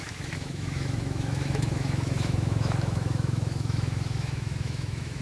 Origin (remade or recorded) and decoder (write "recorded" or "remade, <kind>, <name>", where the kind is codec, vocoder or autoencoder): remade, autoencoder, DAC-VAE